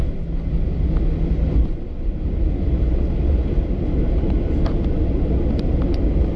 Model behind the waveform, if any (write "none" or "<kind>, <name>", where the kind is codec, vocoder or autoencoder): none